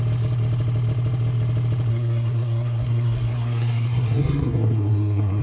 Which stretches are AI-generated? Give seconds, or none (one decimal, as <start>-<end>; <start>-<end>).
1.9-5.4